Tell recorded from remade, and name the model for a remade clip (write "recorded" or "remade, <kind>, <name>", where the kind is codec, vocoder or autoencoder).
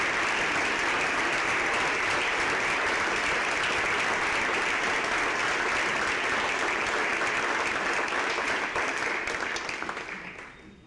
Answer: recorded